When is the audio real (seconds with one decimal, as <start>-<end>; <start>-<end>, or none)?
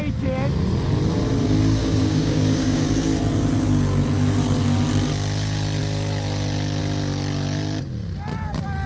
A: 0.0-1.8; 2.8-8.9